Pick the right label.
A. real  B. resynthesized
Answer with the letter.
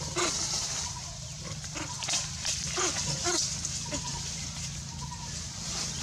A